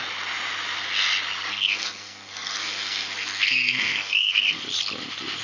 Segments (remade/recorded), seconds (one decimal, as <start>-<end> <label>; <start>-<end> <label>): 0.0-1.5 recorded; 1.5-4.6 remade; 4.6-5.4 recorded